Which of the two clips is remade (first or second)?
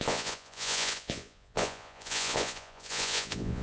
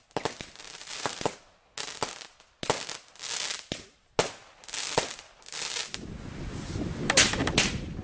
first